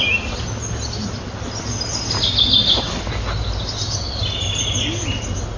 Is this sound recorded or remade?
recorded